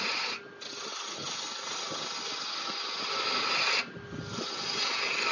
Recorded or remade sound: recorded